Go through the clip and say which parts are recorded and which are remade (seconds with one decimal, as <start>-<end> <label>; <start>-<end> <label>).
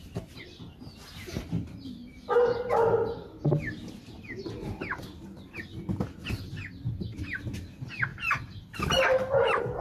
0.0-9.8 recorded